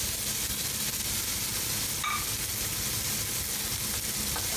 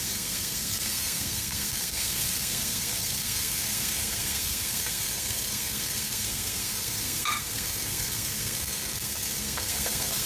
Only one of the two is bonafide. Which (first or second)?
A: first